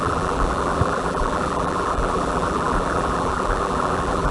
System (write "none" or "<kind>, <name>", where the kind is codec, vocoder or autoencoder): vocoder, BigVGAN v2